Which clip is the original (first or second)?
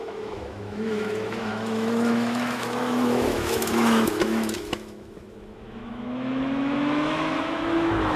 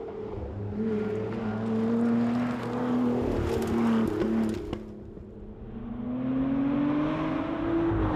second